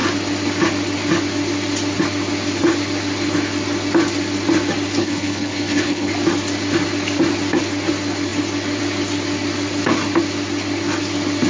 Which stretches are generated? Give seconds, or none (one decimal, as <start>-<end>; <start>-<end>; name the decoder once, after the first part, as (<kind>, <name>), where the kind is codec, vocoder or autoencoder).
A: 5.0-6.1 (codec, HILCodec)